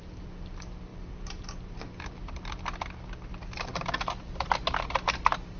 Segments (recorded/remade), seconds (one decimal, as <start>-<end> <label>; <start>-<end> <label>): 0.0-5.6 recorded